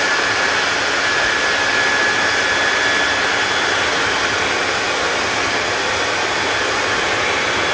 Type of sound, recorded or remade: recorded